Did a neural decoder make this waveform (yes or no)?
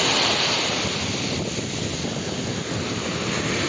no